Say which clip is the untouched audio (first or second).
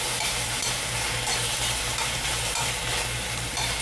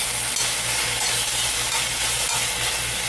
second